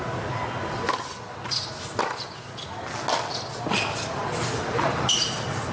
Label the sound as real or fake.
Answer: real